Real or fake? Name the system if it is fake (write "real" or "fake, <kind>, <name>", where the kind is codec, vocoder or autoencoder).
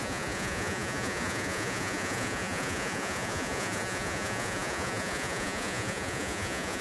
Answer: fake, vocoder, Vocos